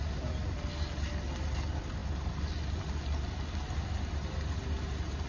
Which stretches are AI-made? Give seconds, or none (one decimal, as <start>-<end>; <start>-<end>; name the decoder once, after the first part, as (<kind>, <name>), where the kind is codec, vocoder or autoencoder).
none